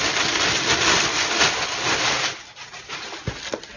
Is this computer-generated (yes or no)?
no